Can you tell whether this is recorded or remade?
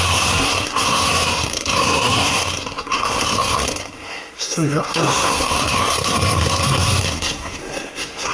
remade